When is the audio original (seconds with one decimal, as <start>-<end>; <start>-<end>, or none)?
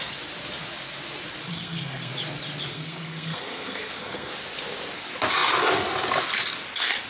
0.0-1.5; 2.1-2.7; 4.3-7.1